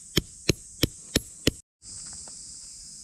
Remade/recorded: recorded